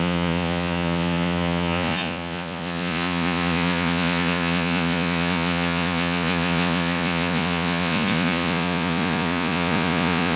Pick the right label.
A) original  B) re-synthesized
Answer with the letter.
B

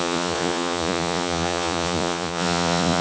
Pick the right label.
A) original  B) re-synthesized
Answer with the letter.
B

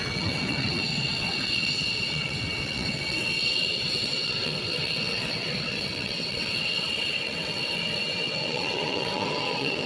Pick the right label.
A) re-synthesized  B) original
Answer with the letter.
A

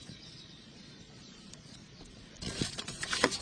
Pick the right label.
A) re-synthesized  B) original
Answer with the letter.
A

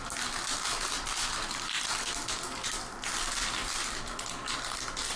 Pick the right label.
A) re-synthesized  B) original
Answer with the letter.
B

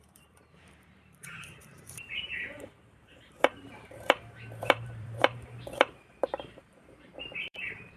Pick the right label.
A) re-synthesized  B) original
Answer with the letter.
A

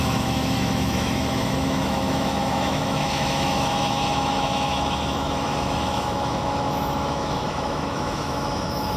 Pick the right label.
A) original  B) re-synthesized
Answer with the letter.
B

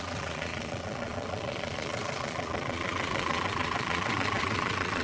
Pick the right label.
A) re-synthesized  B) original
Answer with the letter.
A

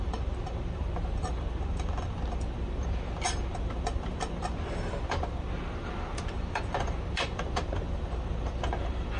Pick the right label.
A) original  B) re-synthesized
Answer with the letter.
B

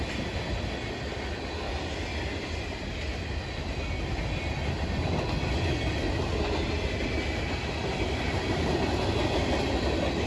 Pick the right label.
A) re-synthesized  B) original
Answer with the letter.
B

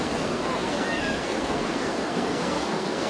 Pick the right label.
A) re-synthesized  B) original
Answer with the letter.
A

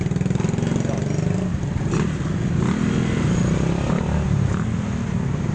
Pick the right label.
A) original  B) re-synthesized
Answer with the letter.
A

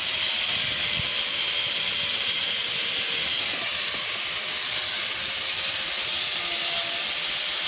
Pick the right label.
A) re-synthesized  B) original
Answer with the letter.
B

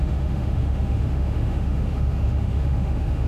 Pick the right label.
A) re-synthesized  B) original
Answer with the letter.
A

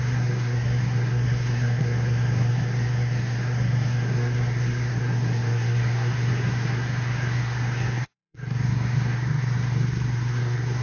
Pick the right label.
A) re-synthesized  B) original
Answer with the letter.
A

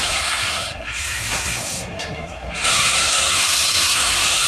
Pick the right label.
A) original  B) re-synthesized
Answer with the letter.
B